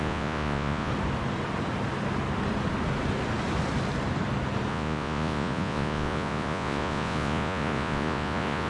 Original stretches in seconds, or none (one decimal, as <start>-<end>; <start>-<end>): 0.9-4.7